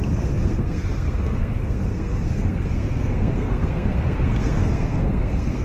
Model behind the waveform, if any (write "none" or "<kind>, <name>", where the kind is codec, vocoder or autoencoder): codec, SNAC